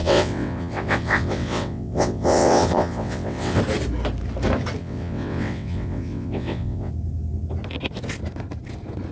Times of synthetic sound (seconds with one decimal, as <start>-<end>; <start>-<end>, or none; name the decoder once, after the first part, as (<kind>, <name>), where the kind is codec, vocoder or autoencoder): 0.0-3.6 (vocoder, WaveNeXt); 4.8-6.9